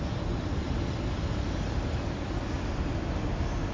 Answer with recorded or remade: recorded